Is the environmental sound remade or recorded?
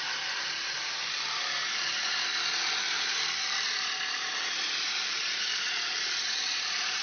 remade